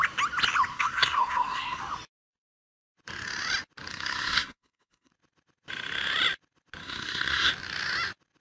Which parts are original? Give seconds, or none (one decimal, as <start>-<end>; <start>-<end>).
0.0-0.7; 1.8-3.9; 5.1-6.8; 7.5-8.4